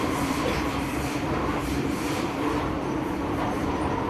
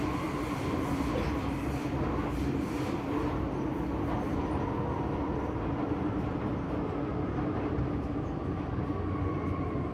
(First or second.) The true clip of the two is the second